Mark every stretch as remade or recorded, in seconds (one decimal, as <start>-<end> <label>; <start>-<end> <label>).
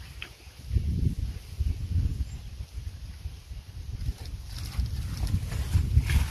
0.0-6.3 recorded